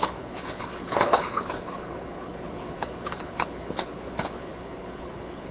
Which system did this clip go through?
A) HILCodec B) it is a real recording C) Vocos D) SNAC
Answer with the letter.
A